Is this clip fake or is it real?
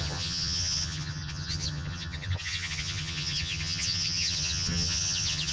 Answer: fake